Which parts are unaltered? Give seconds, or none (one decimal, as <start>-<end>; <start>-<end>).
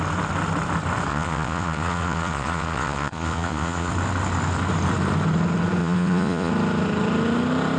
0.0-1.1; 3.9-5.8; 6.5-7.8